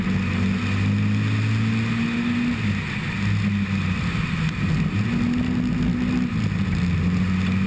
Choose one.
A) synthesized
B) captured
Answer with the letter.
B